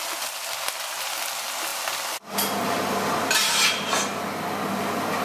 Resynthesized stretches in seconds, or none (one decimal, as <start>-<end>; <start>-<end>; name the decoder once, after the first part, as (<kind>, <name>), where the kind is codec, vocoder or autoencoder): none